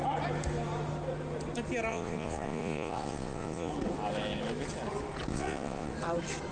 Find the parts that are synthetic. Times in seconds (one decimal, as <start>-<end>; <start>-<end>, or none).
1.9-3.7; 5.3-5.9